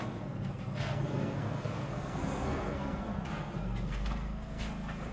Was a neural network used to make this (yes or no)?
yes